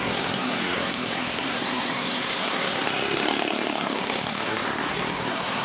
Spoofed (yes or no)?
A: yes